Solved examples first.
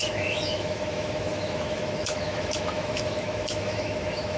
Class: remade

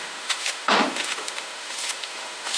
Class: remade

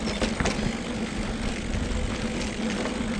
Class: recorded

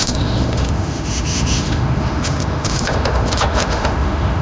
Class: remade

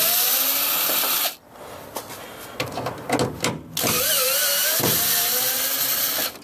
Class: recorded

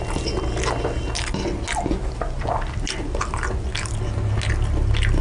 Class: recorded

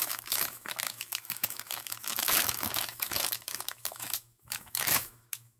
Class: remade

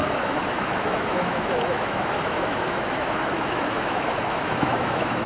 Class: remade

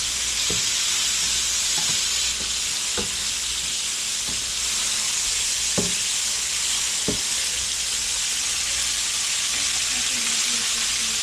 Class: recorded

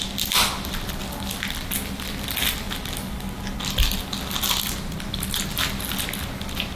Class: recorded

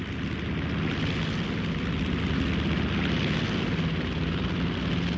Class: recorded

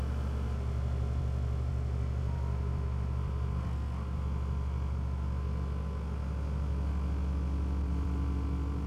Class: recorded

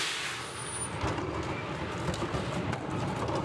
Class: recorded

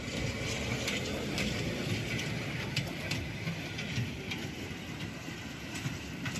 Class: recorded